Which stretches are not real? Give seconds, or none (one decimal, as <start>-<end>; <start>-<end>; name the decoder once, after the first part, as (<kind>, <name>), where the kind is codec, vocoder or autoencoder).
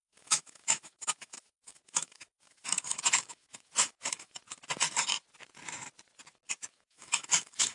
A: 0.0-4.4 (autoencoder, DAC-VAE); 6.7-7.7